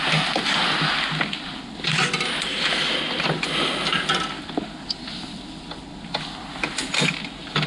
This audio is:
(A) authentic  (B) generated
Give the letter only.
A